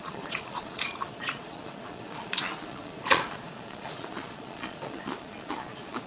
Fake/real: fake